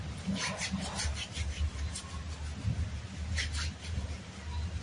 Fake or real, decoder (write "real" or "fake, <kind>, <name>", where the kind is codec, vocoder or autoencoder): fake, vocoder, BigVGAN v2